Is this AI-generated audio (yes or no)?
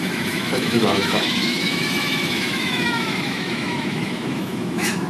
yes